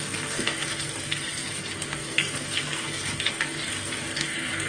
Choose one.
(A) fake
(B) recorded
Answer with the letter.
A